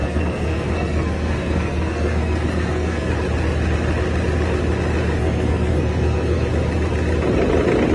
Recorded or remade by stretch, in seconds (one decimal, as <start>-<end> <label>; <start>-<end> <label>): 0.0-3.1 remade; 3.1-5.2 recorded; 5.2-6.5 remade; 6.5-7.9 recorded